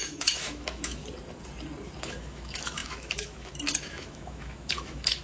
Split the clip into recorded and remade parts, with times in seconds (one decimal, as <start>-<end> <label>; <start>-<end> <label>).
0.0-1.0 remade; 1.0-2.0 recorded; 2.0-5.2 remade